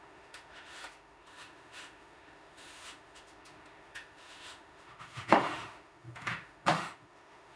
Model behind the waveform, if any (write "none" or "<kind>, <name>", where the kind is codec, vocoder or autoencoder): autoencoder, DAC-VAE